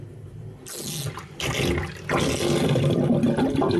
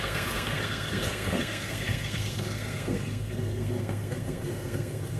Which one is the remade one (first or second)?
second